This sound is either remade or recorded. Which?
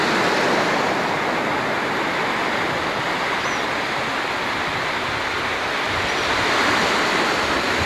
recorded